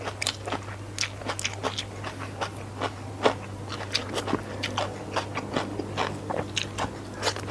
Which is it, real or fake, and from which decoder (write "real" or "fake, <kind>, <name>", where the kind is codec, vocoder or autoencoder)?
real